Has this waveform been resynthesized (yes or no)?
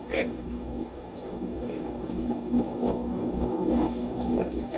yes